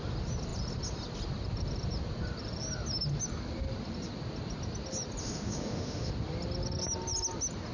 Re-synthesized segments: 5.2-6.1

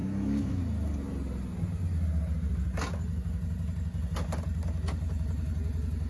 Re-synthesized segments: 0.0-0.6

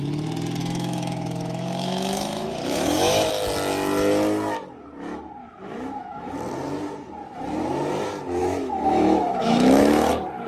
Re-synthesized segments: 0.6-3.3; 5.4-6.3; 8.4-10.1

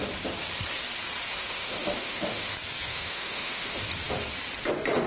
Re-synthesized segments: 1.3-2.5; 2.9-3.8

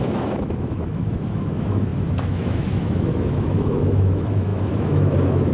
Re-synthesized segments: 0.0-5.5

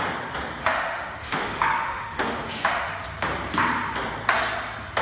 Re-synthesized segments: 0.6-2.9

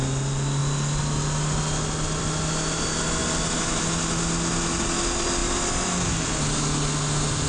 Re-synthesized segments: none